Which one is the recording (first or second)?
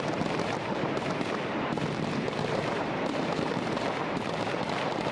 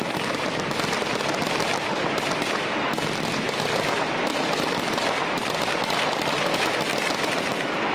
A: second